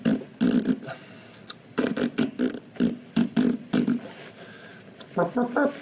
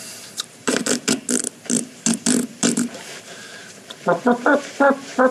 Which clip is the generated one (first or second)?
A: second